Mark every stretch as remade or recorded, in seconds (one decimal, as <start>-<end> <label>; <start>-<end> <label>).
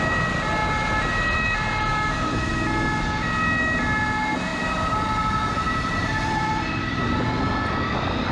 0.0-1.9 recorded; 1.9-2.5 remade; 2.5-4.5 recorded; 4.5-6.7 remade; 6.7-8.3 recorded